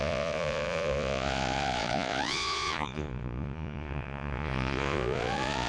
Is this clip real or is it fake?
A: fake